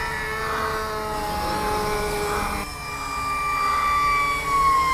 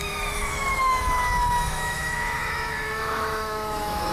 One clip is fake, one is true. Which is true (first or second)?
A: first